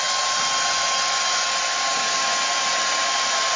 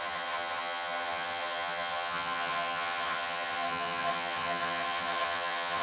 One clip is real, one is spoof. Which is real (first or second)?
first